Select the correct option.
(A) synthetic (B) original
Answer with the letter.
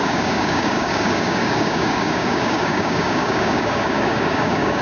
A